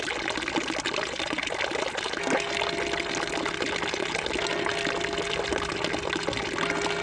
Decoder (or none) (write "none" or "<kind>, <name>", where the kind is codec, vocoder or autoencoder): none